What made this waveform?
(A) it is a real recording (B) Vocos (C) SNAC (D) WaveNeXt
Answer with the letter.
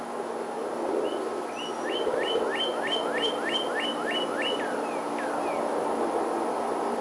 A